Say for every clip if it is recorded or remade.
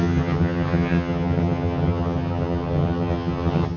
remade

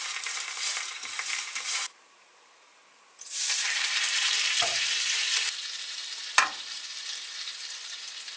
remade